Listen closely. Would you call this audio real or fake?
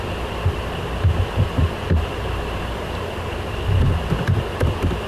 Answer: real